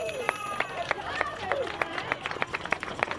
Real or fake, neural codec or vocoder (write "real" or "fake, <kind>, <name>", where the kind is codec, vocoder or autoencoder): fake, vocoder, Vocos